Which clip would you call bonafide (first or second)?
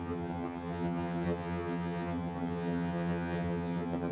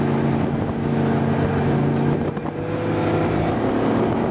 second